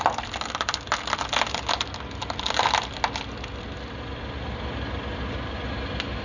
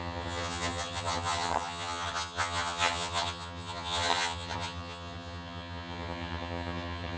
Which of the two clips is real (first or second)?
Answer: first